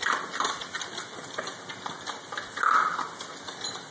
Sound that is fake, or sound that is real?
real